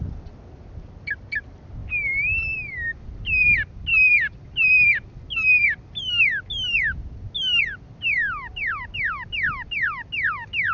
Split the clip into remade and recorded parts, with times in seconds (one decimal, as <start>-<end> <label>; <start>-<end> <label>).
0.0-10.7 recorded